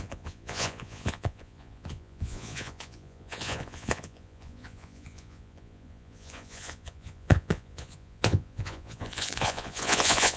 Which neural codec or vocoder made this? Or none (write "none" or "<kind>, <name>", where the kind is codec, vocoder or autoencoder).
vocoder, Vocos